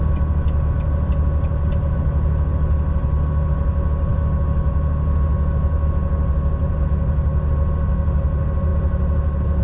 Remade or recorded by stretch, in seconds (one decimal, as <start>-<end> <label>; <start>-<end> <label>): 0.0-9.6 recorded